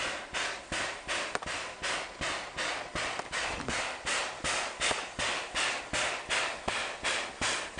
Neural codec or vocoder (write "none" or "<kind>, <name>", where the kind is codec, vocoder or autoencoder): none